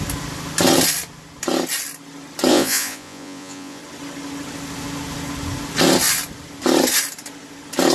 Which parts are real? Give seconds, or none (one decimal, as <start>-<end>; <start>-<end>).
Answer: 0.0-2.5; 3.8-7.9

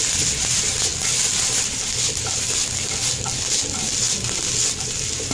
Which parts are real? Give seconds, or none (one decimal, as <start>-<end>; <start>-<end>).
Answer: 0.0-5.3

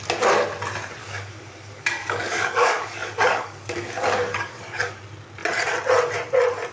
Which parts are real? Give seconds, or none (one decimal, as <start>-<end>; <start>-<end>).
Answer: 0.0-1.0; 5.0-6.7

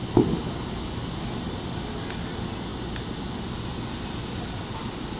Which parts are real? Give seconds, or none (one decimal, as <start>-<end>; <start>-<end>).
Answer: 0.0-5.2

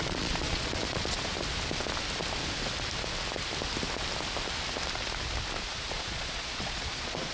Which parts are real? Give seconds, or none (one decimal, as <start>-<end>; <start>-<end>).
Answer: 1.3-5.7

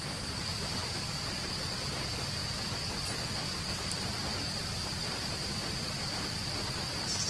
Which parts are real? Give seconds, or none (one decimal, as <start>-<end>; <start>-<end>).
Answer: 0.0-7.3

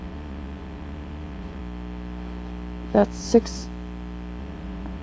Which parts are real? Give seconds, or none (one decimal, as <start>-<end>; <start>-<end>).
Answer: 1.6-3.2; 3.6-4.4

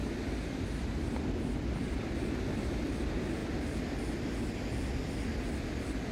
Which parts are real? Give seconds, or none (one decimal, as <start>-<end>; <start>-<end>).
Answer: 0.0-6.1